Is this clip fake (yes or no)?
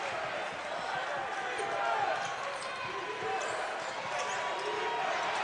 no